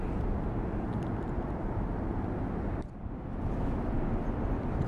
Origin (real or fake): real